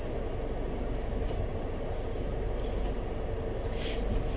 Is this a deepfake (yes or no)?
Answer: no